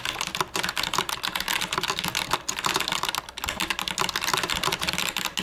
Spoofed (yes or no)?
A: no